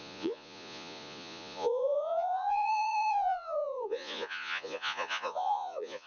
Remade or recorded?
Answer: remade